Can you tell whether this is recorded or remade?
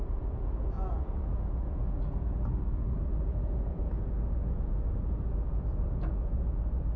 remade